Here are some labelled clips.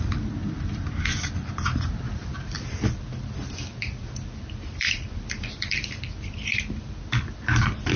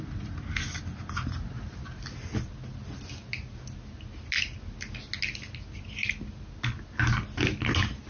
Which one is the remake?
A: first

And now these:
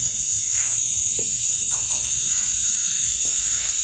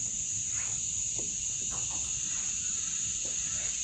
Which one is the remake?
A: first